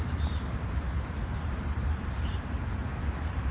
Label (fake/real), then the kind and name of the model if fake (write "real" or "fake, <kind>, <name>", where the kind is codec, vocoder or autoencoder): fake, vocoder, BigVGAN v2